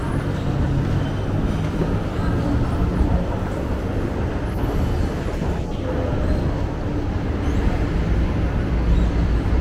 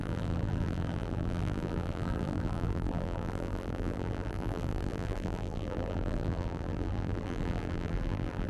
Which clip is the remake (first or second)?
second